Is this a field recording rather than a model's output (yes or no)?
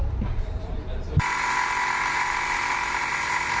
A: no